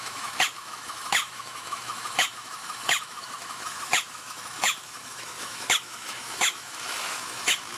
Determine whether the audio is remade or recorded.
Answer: remade